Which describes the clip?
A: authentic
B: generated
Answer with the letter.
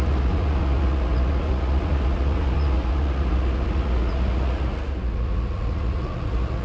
B